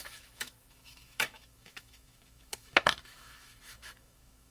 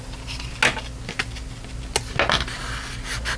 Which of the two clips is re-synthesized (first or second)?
first